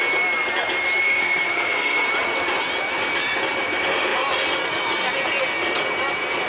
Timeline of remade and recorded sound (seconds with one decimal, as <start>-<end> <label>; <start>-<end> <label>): 0.0-1.0 recorded; 1.0-2.1 remade; 2.1-6.5 recorded